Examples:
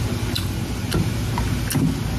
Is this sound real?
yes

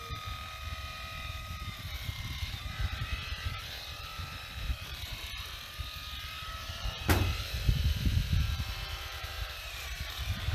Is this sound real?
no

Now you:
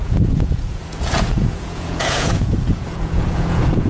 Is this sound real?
no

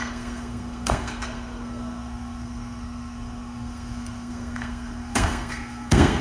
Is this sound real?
no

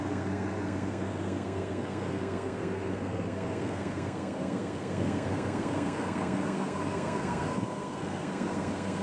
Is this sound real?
no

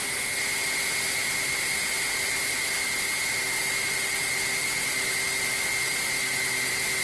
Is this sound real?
yes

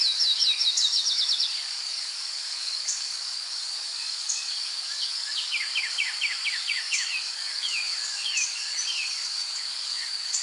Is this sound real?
no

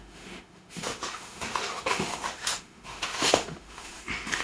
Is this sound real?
no